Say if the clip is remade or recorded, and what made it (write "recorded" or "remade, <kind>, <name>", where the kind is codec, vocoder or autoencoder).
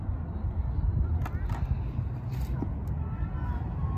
recorded